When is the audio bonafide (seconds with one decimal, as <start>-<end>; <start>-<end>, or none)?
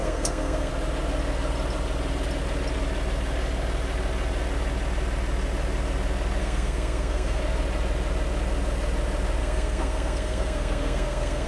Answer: 0.7-6.4; 7.4-9.4